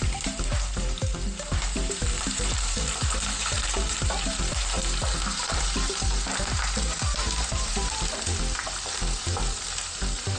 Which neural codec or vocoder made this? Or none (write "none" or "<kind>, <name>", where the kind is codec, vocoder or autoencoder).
vocoder, BigVGAN v2